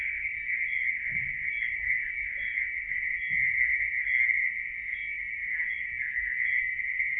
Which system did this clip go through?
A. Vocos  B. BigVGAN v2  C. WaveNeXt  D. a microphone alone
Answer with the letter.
D